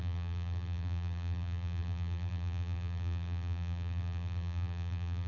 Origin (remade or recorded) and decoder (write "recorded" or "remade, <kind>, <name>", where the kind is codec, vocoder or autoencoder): remade, vocoder, BigVGAN v2